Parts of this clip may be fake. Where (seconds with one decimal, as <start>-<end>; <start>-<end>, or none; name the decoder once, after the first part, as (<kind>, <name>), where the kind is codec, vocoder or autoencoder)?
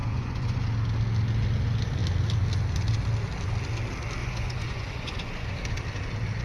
0.0-0.6 (vocoder, Vocos); 4.2-5.5